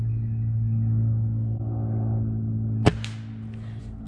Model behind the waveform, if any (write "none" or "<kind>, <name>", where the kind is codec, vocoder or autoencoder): none